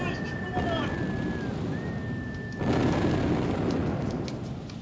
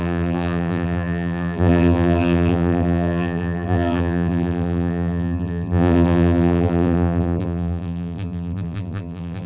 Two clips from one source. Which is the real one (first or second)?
first